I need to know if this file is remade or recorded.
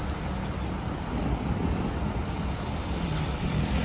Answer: recorded